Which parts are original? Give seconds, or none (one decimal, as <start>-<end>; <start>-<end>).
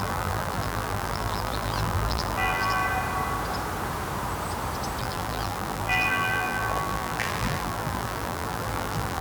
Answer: 2.8-5.0